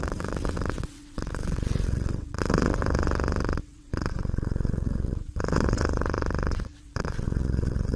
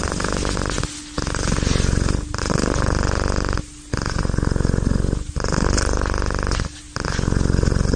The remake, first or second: first